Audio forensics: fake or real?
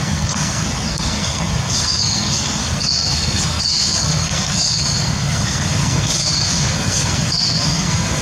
fake